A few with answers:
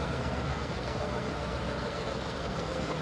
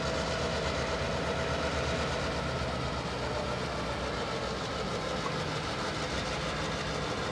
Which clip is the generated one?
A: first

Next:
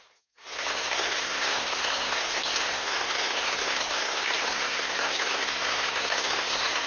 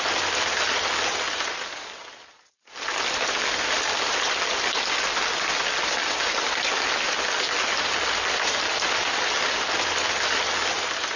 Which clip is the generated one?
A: first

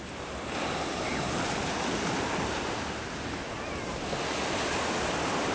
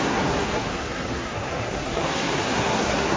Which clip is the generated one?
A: second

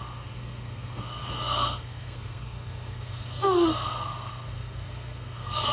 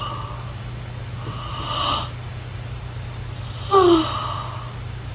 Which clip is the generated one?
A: first